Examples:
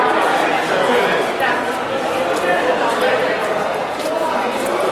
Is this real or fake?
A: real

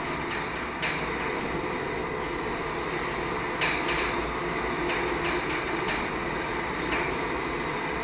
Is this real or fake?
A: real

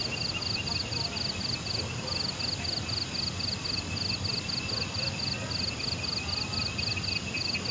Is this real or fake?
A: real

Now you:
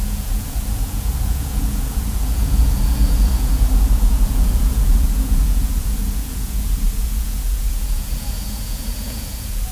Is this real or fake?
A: fake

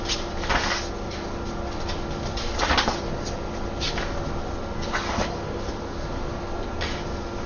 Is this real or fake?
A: real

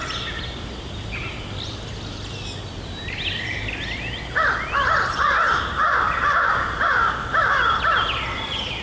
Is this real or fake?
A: real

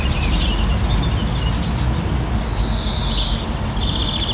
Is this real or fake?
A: real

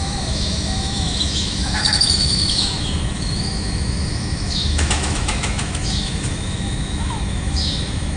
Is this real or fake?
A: fake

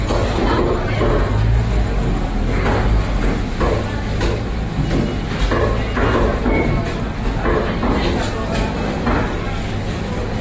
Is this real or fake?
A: real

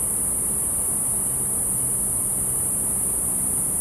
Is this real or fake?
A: real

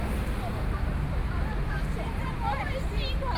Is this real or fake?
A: fake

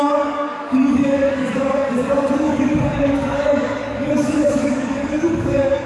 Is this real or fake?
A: fake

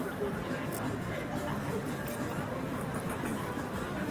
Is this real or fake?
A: real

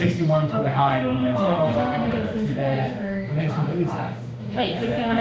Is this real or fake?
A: fake